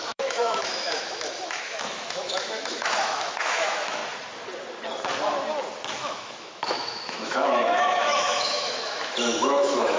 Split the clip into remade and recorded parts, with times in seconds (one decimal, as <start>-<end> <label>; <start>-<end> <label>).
0.0-4.0 remade; 4.0-5.9 recorded; 5.9-10.0 remade